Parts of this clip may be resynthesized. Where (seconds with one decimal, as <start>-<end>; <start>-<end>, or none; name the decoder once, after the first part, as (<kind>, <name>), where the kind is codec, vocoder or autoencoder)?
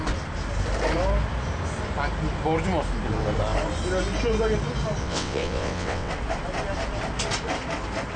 5.0-6.1 (vocoder, WaveNeXt)